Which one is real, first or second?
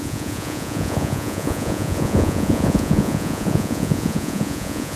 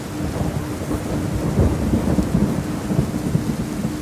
second